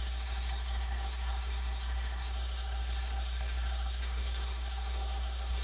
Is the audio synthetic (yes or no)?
yes